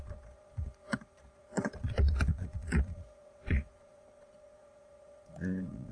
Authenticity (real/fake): fake